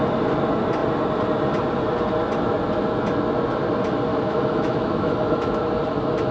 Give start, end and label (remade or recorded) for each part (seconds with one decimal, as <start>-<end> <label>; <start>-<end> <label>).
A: 0.0-4.1 recorded; 4.1-5.5 remade; 5.5-6.3 recorded